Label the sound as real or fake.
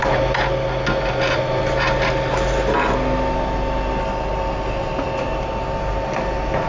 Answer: real